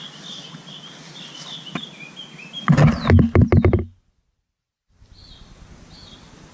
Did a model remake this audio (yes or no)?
no